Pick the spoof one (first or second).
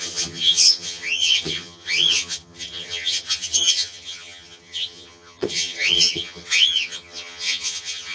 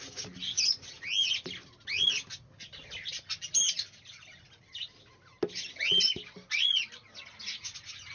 first